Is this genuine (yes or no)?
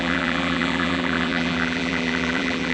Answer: no